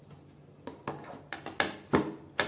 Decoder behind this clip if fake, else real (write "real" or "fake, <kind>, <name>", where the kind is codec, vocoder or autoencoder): real